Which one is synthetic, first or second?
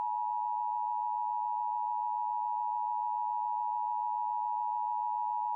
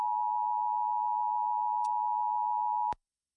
second